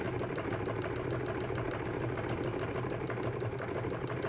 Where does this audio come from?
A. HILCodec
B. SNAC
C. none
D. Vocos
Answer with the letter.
C